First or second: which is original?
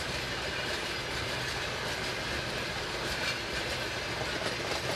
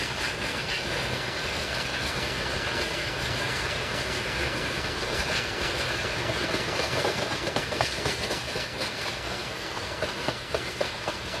first